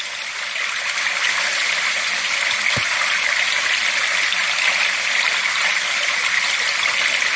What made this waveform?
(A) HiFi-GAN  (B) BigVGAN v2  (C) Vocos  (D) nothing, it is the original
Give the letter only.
D